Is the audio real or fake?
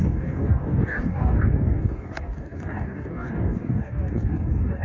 fake